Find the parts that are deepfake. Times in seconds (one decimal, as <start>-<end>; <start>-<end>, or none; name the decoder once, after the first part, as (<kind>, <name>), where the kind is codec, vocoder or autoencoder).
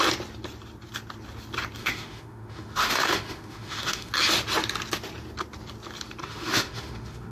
1.8-4.1 (autoencoder, DAC-VAE); 6.2-7.3